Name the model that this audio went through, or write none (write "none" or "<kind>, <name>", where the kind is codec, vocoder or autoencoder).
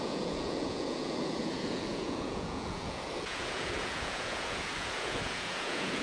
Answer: vocoder, Vocos